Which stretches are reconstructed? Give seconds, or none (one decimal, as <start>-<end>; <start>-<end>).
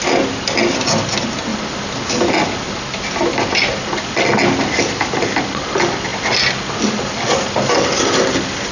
none